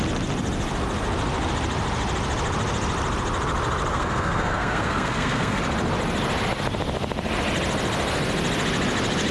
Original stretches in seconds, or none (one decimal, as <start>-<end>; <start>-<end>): 0.0-3.9; 5.6-9.3